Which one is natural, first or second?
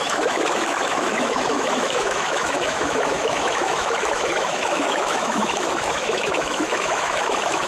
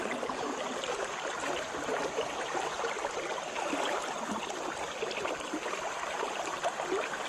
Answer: second